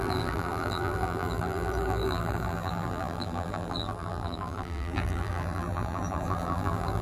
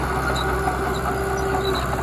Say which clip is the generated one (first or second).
first